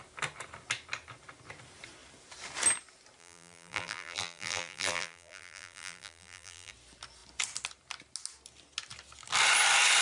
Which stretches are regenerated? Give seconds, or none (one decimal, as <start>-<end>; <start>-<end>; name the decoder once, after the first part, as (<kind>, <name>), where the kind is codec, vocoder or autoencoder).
3.2-6.7 (vocoder, BigVGAN v2)